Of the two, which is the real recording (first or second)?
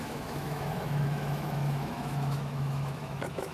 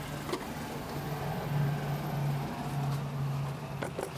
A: second